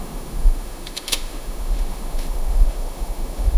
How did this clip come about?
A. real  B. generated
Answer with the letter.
B